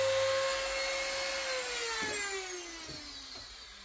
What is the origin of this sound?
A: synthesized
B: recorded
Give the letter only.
B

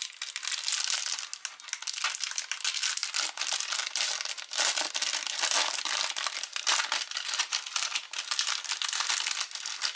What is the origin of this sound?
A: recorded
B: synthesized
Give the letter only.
A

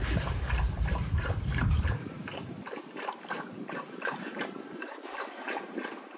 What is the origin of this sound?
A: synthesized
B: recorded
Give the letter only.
A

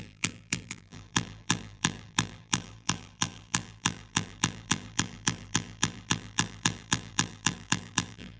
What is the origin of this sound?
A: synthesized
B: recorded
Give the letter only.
A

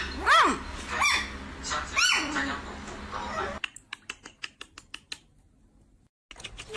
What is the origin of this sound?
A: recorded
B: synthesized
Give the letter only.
A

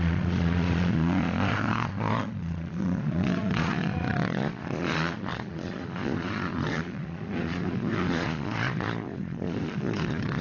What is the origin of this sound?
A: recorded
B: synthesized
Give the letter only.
B